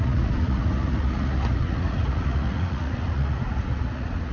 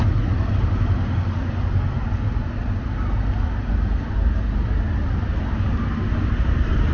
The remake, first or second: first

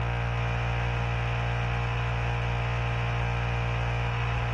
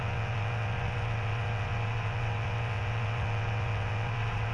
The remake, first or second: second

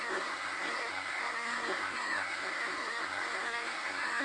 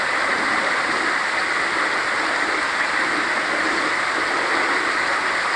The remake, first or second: first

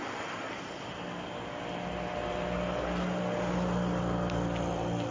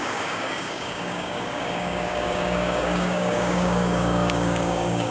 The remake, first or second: second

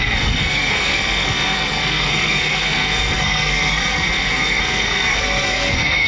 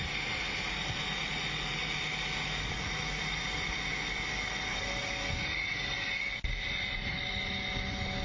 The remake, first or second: first